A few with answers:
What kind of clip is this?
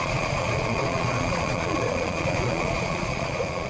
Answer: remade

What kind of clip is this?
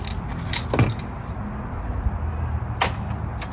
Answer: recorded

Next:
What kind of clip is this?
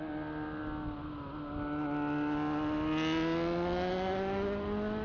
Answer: recorded